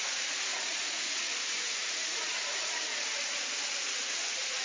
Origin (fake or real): fake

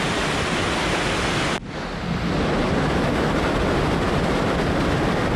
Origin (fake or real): real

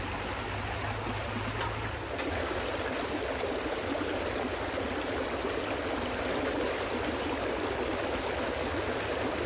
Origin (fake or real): real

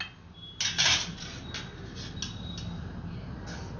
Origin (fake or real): real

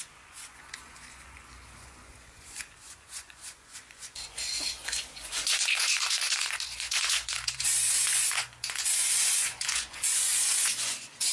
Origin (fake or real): fake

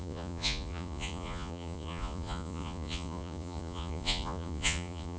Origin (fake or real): fake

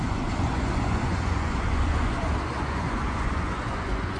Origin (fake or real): fake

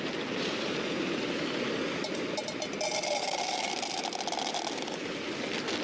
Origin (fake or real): real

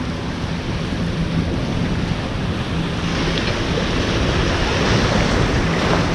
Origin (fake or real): real